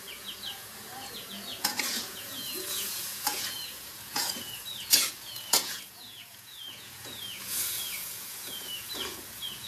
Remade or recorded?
remade